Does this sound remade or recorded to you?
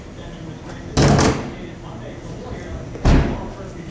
recorded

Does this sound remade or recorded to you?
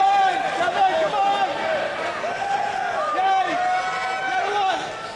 recorded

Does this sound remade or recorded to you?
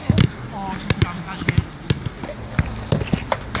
recorded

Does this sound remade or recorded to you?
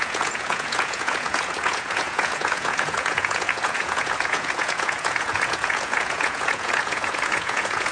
remade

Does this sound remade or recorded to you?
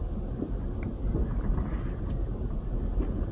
recorded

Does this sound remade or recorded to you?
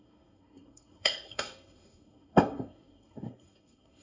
remade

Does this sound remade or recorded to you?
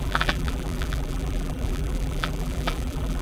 remade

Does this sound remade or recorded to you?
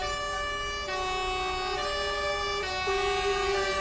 recorded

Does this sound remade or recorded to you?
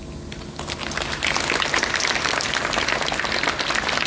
recorded